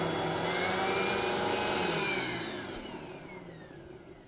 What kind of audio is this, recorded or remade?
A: recorded